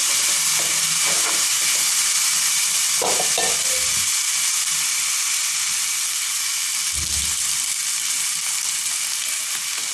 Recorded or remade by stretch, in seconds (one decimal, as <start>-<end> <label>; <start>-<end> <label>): 0.0-9.9 recorded